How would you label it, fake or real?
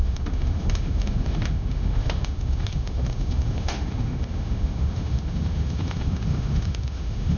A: fake